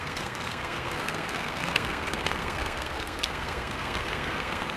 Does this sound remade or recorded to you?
remade